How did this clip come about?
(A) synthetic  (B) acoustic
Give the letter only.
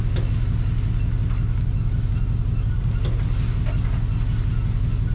B